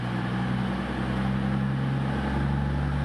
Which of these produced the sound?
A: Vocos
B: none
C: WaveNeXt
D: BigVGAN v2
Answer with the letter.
B